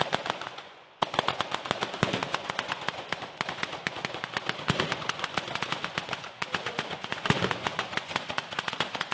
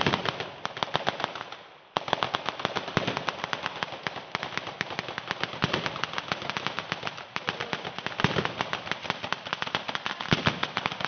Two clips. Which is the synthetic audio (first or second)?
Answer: first